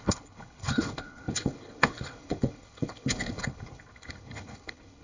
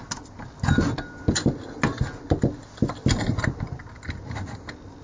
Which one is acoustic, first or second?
second